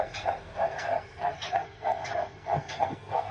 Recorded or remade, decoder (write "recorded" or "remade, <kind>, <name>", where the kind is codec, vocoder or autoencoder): remade, codec, SNAC